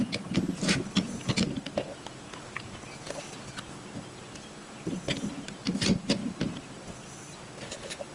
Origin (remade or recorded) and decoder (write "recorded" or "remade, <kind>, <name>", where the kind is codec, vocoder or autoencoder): recorded